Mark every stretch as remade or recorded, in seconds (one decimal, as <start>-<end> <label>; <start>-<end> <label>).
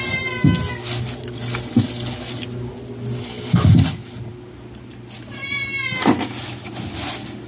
0.0-7.5 recorded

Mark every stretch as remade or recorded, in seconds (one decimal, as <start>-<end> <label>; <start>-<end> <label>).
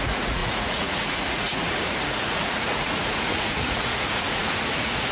0.0-5.1 remade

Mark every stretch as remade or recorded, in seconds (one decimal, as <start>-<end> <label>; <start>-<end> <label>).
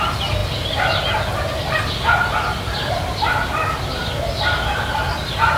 0.0-5.6 recorded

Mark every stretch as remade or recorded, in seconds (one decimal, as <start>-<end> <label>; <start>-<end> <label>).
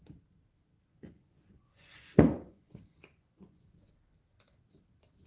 0.0-0.9 recorded; 0.9-3.9 remade; 3.9-5.3 recorded